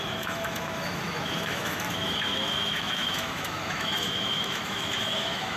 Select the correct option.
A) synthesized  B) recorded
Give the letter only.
A